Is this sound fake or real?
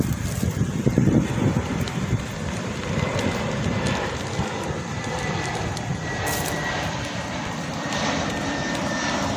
fake